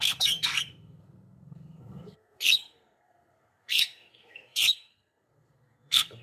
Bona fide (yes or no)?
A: no